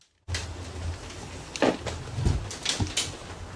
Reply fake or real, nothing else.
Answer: real